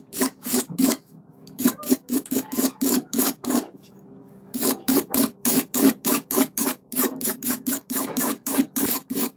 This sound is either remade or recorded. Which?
remade